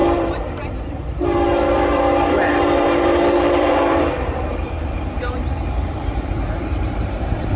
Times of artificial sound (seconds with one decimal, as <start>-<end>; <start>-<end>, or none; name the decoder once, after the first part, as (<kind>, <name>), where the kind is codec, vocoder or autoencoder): 0.0-7.6 (vocoder, BigVGAN v2)